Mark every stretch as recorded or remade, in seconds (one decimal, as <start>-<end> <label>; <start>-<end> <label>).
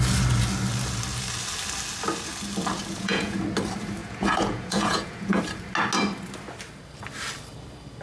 0.0-2.9 recorded; 2.9-3.4 remade; 3.4-4.0 recorded; 4.0-5.4 remade; 5.4-8.0 recorded